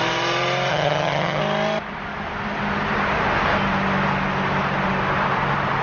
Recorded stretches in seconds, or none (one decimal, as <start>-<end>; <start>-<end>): 0.0-0.7; 1.4-5.8